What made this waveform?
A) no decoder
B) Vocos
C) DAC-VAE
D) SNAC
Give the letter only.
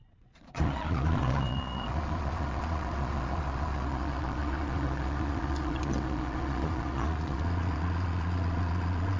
B